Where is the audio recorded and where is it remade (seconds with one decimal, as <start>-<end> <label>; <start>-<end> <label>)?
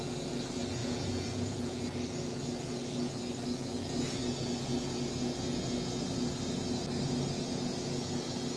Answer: 0.0-0.8 recorded; 0.8-1.8 remade; 1.8-8.6 recorded